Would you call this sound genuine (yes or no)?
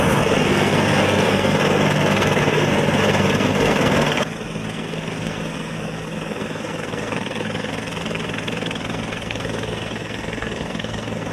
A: no